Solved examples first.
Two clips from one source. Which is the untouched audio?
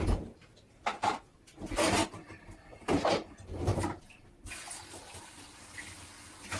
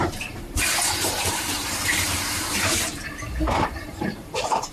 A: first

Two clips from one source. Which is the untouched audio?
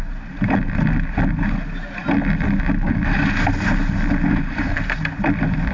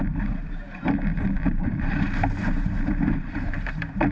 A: first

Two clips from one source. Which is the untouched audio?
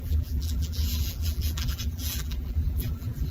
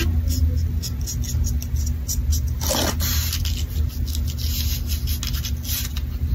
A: second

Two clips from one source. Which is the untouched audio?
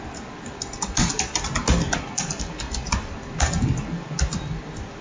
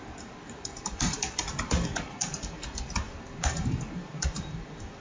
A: first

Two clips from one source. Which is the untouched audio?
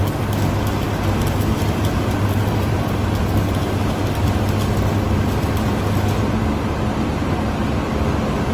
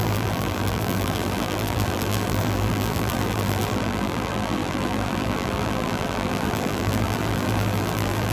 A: first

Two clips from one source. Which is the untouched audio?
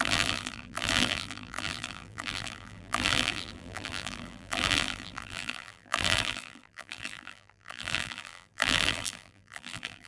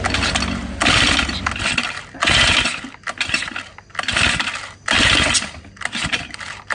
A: second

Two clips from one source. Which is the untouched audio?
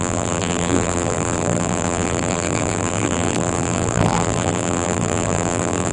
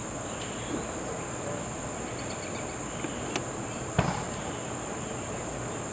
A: second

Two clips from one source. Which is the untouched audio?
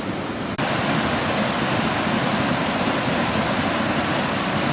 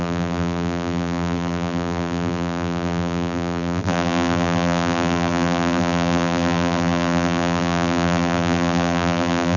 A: first